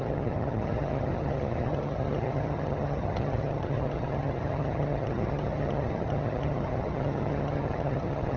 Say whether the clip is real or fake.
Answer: fake